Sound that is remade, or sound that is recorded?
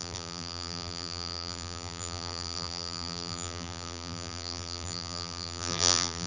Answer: remade